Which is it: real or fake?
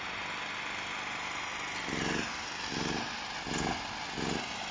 real